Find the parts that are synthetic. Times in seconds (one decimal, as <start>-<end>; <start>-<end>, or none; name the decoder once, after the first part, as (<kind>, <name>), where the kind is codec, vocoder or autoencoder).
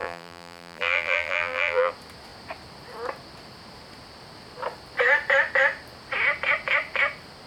0.0-1.9 (vocoder, BigVGAN v2)